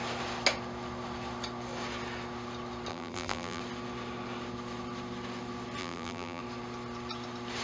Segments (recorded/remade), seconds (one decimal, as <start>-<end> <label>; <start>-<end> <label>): 0.0-2.9 recorded; 2.9-3.6 remade; 3.6-5.8 recorded; 5.8-6.4 remade; 6.4-7.6 recorded